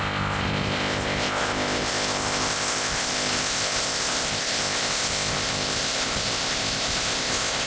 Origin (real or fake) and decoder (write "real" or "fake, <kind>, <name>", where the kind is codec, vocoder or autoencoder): fake, codec, ZipCodec